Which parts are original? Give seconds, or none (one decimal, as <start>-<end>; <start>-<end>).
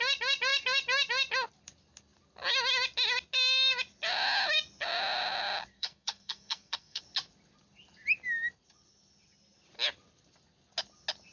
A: 0.0-5.7; 7.0-11.3